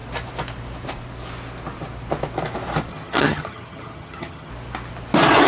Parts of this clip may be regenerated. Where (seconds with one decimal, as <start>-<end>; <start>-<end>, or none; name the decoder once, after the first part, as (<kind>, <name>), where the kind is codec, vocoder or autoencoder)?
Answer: 2.9-4.5 (vocoder, HiFi-GAN)